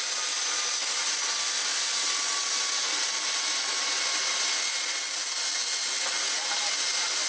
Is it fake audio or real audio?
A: real